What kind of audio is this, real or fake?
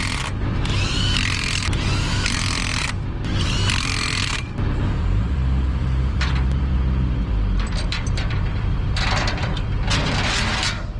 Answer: fake